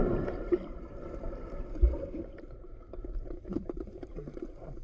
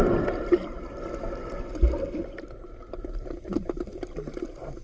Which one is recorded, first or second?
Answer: second